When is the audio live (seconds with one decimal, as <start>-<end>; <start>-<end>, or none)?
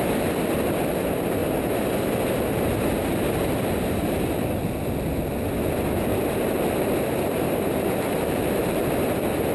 0.0-6.1; 8.9-9.5